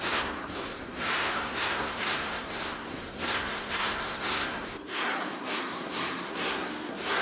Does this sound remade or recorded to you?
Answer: remade